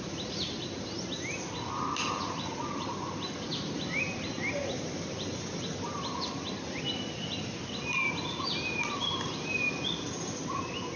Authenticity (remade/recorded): recorded